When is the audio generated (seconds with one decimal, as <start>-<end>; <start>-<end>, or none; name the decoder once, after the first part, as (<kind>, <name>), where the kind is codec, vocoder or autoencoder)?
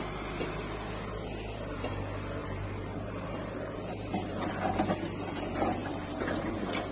2.4-4.5 (vocoder, BigVGAN v2); 5.8-6.5